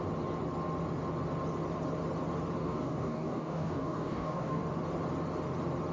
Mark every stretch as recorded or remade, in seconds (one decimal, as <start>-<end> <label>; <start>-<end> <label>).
0.0-2.6 recorded; 2.6-4.6 remade; 4.6-5.9 recorded